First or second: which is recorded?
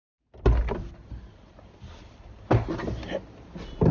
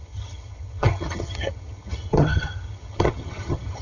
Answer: first